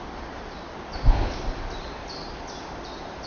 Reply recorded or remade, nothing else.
recorded